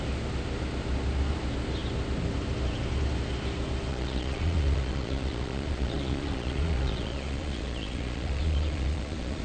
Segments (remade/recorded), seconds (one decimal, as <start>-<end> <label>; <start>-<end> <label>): 0.0-3.9 recorded; 3.9-9.4 remade